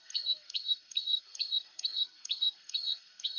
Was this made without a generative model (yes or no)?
no